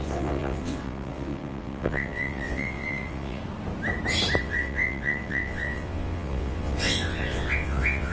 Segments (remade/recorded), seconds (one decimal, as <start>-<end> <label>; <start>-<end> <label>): 0.0-3.4 remade; 3.4-4.4 recorded; 4.4-8.1 remade